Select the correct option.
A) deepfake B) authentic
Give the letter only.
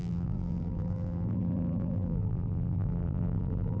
A